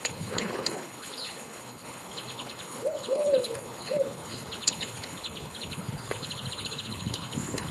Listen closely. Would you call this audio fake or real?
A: fake